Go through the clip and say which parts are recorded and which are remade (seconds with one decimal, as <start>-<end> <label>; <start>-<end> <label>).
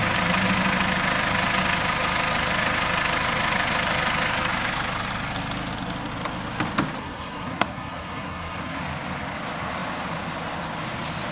0.0-7.0 recorded; 7.0-8.8 remade; 8.8-11.3 recorded